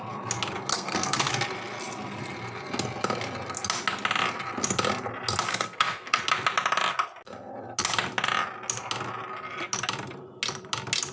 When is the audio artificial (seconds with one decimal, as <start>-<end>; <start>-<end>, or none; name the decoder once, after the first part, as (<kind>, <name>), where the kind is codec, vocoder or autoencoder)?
0.7-1.3 (codec, SNAC); 5.5-6.2